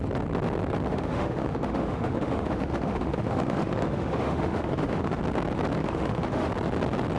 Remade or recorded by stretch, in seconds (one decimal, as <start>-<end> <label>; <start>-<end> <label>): 0.0-0.9 recorded; 0.9-5.2 remade; 5.2-5.8 recorded; 5.8-6.5 remade; 6.5-7.2 recorded